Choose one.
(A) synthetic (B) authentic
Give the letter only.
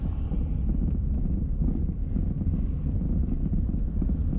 B